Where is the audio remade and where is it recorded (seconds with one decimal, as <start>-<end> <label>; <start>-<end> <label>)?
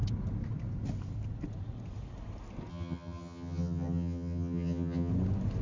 0.0-2.7 recorded; 2.7-5.1 remade; 5.1-5.6 recorded